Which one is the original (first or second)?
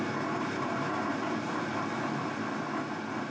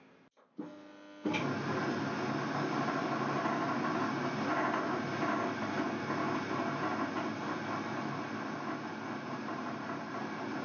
second